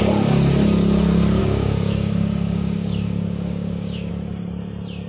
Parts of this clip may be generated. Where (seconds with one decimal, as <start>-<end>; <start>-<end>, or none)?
1.4-4.1